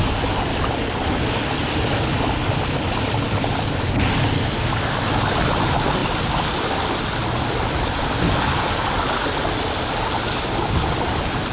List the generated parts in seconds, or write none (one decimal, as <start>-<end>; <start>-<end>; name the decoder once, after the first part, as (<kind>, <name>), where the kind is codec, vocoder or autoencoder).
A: none